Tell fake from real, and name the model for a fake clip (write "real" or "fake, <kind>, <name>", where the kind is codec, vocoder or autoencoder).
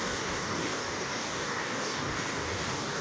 fake, codec, DAC